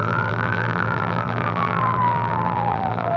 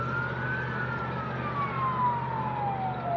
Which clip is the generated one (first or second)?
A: first